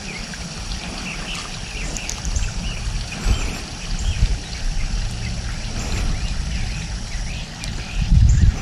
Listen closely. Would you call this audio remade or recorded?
recorded